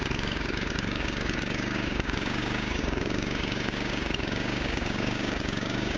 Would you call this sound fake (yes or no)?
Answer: yes